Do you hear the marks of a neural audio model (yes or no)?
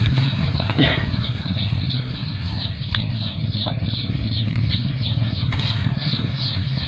yes